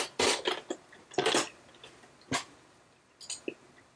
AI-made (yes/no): no